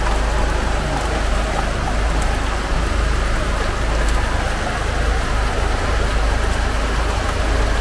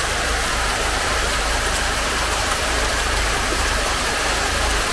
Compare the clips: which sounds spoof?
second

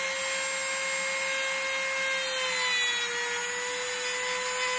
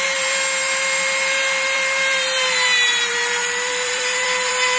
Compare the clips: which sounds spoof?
second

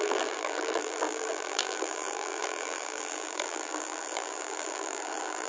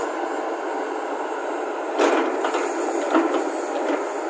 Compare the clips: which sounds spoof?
first